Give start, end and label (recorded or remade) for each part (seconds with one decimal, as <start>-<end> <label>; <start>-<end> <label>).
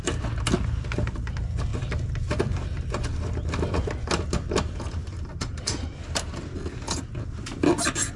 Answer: 0.0-5.0 recorded; 5.0-6.0 remade; 6.0-8.2 recorded